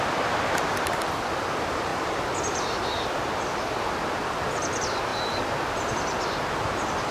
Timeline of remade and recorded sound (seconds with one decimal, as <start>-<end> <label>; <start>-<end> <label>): 0.0-7.1 remade